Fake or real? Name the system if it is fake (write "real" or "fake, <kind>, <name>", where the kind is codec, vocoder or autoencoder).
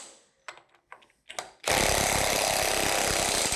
real